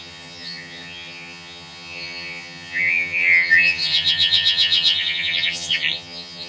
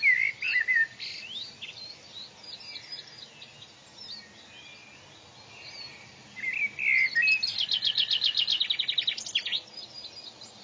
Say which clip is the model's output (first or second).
first